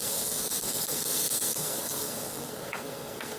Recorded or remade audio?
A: remade